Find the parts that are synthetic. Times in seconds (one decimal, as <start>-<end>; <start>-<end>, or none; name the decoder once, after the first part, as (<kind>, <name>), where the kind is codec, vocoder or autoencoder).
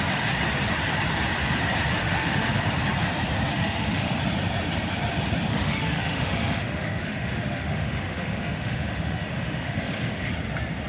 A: 2.0-2.6 (autoencoder, DAC-VAE); 3.5-4.2; 5.5-10.3